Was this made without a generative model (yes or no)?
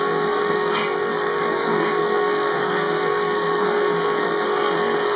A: no